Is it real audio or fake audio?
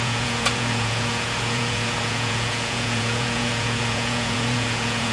fake